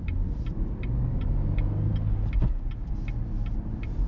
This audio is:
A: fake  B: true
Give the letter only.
B